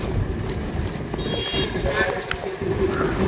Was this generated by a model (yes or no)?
no